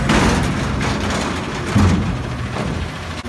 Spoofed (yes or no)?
no